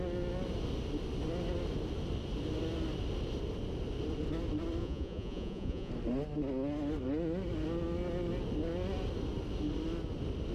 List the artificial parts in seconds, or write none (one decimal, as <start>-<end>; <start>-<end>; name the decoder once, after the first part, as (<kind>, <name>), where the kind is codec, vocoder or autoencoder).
4.8-5.9 (vocoder, Vocos)